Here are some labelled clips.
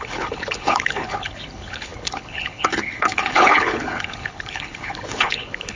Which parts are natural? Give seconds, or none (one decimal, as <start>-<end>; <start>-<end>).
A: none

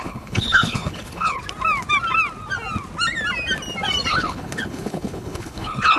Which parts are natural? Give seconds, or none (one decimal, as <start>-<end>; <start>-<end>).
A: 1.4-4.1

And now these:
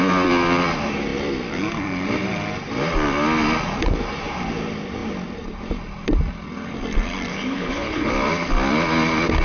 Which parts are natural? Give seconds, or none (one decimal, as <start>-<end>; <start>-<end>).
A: 0.0-7.3; 8.1-9.4

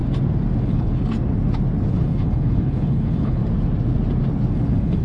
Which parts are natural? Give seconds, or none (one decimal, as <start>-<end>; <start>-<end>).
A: 0.0-0.6; 1.0-1.9; 3.4-4.5

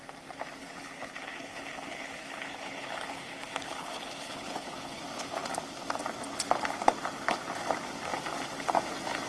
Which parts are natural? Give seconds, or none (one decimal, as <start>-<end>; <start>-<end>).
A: 0.0-0.6; 5.0-9.3

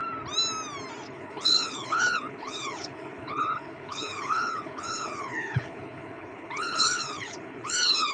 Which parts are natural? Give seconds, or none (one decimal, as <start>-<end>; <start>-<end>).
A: 0.0-1.1

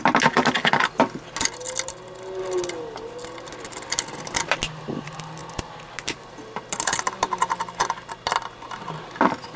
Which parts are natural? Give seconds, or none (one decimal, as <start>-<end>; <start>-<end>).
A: 0.0-9.6